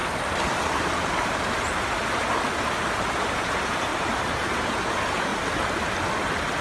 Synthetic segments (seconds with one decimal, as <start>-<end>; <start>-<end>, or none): 3.3-3.9; 4.4-5.3